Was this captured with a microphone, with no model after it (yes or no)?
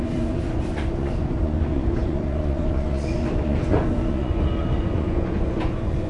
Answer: no